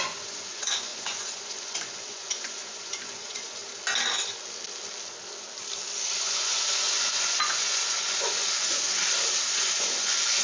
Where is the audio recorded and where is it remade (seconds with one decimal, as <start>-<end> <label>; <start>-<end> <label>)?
0.0-3.6 remade; 3.6-6.2 recorded; 6.2-9.0 remade; 9.0-9.5 recorded; 9.5-10.4 remade